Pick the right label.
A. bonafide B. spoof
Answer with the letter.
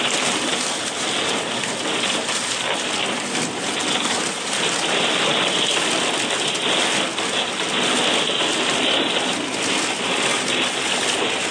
A